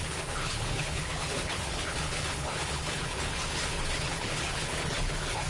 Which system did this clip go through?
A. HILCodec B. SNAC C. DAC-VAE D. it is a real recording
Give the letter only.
A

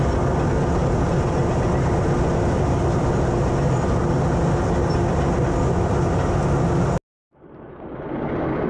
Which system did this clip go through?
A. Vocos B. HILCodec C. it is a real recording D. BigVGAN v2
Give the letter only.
C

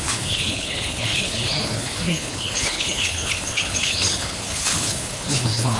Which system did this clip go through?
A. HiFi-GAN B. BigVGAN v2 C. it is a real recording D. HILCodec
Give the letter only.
D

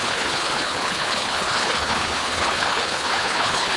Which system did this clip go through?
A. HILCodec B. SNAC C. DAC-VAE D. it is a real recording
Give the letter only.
A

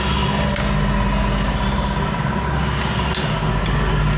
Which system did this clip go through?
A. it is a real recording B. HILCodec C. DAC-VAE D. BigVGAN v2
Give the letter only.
A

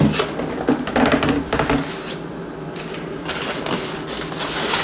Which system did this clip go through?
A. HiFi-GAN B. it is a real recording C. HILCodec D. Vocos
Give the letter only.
B